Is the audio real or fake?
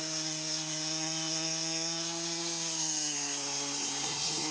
fake